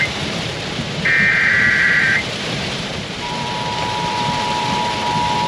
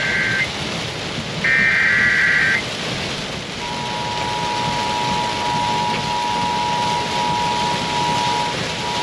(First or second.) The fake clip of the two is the first